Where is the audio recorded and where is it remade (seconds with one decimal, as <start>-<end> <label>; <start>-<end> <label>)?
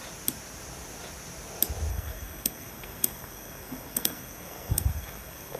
0.0-1.9 recorded; 1.9-5.6 remade